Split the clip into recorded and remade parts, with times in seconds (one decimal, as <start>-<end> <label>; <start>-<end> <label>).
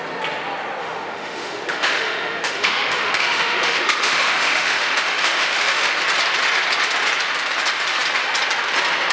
0.0-0.8 recorded; 0.8-6.0 remade; 6.0-9.1 recorded